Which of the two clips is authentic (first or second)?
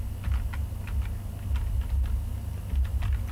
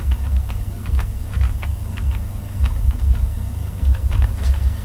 first